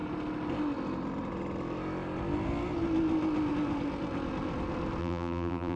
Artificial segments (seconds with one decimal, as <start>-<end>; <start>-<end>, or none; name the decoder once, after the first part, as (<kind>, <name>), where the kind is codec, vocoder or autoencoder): 5.0-5.8 (vocoder, BigVGAN v2)